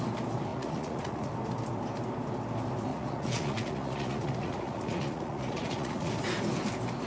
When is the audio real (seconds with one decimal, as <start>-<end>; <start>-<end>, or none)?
0.0-0.5; 1.3-2.9; 6.1-7.1